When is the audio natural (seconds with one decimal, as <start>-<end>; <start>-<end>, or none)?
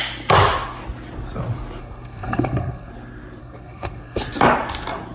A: 0.0-1.8; 2.9-3.4; 4.2-5.1